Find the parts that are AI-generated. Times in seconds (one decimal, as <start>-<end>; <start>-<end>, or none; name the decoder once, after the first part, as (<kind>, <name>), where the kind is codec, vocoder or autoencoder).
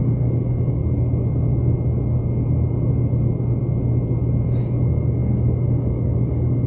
0.0-0.8 (codec, DAC); 4.8-6.7